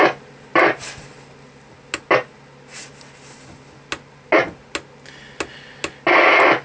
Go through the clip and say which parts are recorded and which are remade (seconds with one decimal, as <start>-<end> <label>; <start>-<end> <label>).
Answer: 0.0-0.5 recorded; 0.5-1.2 remade; 1.2-6.6 recorded